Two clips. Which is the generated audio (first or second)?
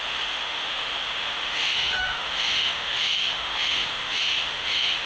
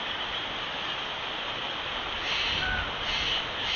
first